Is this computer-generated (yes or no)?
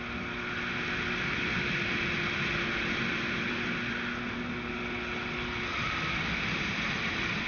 no